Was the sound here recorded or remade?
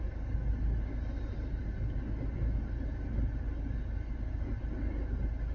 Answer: recorded